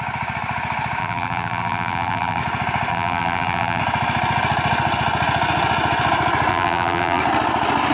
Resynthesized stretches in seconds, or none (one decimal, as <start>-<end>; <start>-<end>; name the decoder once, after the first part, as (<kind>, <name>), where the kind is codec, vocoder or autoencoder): 1.0-2.4 (vocoder, BigVGAN v2); 2.9-3.8; 6.5-7.2